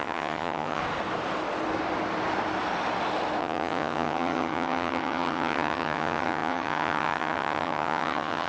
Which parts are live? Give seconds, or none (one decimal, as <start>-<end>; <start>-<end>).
0.8-3.4